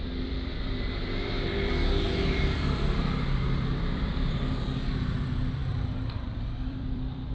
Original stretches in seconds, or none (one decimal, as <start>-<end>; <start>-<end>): none